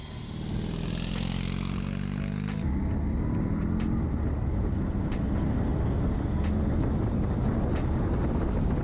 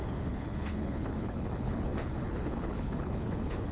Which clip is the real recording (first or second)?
first